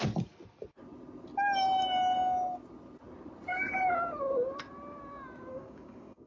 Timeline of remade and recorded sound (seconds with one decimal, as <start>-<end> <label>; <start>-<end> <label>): 0.0-5.5 recorded; 5.5-6.3 remade